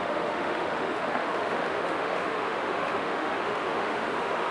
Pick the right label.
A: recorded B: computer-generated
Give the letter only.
B